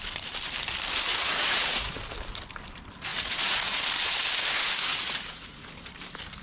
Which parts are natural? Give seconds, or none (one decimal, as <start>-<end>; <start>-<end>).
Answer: 0.0-1.1; 2.0-3.1; 3.8-4.9; 5.7-6.4